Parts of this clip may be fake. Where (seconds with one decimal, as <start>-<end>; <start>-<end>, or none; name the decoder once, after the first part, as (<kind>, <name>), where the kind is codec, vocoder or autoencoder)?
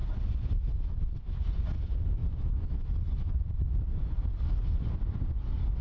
0.0-1.5 (vocoder, BigVGAN v2); 2.2-5.1